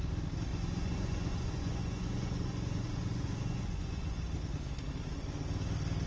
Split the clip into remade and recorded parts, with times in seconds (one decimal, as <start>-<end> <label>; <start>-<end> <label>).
0.0-0.5 recorded; 0.5-4.2 remade; 4.2-6.1 recorded